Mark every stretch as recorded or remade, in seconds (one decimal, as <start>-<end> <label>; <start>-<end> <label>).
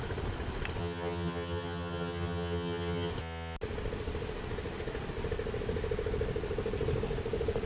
0.0-0.8 recorded; 0.8-3.1 remade; 3.1-7.7 recorded